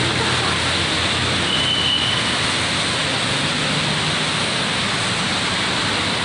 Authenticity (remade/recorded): recorded